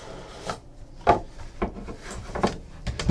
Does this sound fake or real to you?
real